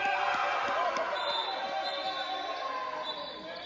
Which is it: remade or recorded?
recorded